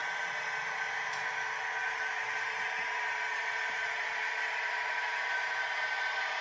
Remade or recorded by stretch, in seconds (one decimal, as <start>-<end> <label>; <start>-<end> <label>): 0.0-1.3 remade; 1.3-1.8 recorded; 1.8-5.6 remade; 5.6-6.4 recorded